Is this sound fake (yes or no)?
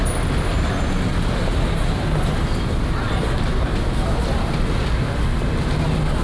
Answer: no